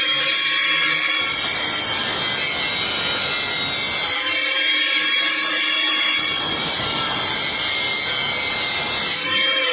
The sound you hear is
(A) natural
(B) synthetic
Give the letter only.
A